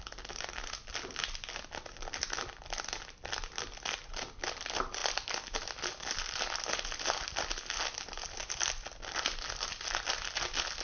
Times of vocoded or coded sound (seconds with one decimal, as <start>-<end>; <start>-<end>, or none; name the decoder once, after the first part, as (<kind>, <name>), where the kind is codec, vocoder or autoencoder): none